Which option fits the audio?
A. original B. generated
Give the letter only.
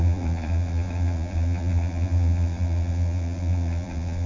B